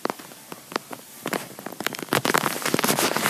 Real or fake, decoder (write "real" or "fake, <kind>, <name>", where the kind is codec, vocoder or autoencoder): fake, vocoder, BigVGAN v2